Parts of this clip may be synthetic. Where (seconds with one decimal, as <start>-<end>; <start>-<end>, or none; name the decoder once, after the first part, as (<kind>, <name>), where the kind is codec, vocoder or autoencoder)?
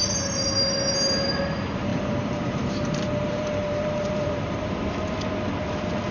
1.9-4.7 (vocoder, BigVGAN v2)